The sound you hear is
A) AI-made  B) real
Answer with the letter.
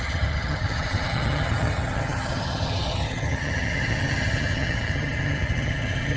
A